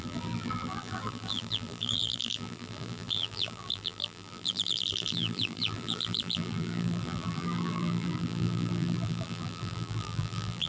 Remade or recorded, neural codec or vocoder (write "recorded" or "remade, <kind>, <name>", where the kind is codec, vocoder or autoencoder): remade, vocoder, BigVGAN v2